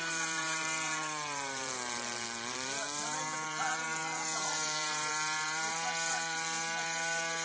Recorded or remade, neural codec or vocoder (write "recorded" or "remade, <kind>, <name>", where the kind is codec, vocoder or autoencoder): remade, vocoder, BigVGAN v2